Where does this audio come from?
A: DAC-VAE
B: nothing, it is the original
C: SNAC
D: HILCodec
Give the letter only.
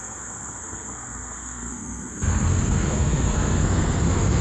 C